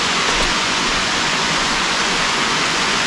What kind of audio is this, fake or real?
fake